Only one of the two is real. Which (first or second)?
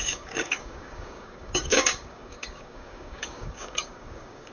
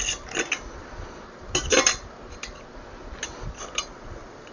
second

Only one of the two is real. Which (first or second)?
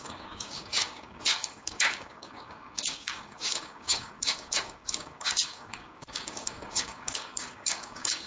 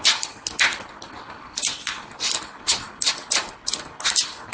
second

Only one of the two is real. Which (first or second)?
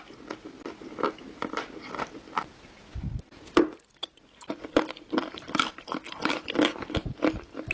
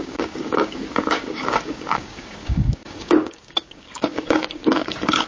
first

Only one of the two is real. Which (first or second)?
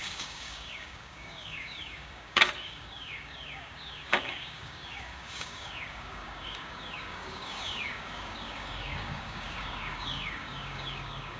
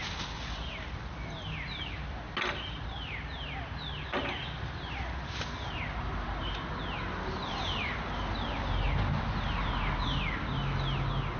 second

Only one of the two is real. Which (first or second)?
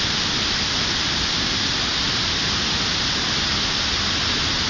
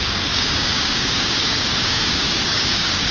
first